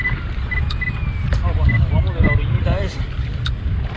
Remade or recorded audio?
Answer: recorded